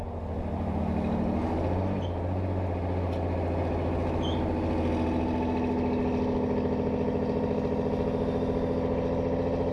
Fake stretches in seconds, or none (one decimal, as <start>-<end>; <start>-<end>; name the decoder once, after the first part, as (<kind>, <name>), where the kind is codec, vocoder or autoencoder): none